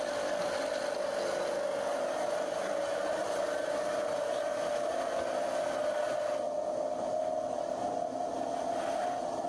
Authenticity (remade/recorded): recorded